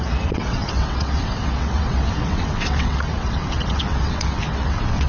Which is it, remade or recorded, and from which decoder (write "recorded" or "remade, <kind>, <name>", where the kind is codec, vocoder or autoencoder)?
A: remade, vocoder, WaveNeXt